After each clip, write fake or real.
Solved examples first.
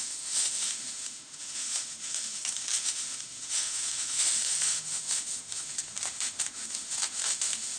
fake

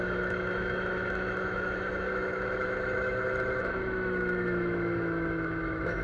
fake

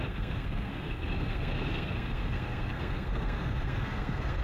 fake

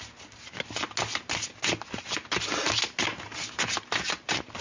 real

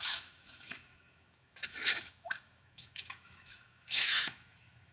fake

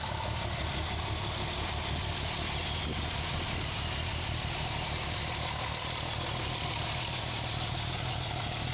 real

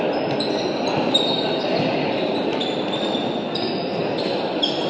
real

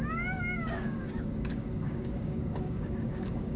fake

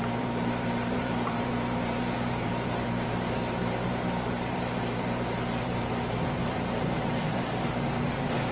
fake